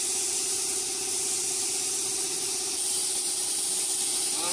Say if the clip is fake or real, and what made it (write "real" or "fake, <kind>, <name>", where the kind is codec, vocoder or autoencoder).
real